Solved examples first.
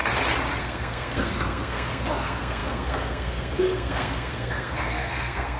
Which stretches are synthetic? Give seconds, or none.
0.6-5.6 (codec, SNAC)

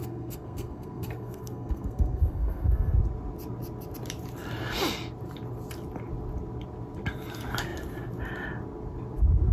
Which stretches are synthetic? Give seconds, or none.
0.0-3.0 (codec, SNAC)

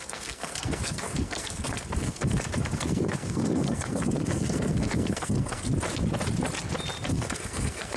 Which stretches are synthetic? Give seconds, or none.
0.0-5.7 (codec, SNAC); 7.1-8.0

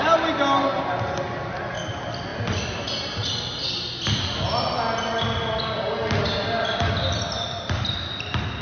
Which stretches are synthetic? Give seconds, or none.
none

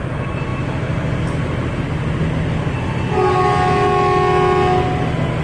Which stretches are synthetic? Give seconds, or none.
none